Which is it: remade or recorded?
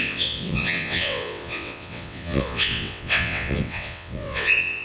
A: remade